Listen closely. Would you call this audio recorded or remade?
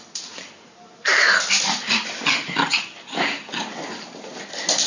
recorded